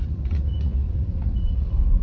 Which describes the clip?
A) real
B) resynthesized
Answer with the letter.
B